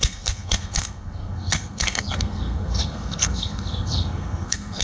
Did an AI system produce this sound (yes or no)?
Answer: yes